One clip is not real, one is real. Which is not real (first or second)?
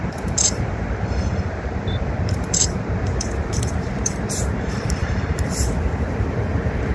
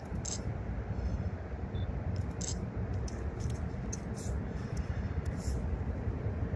first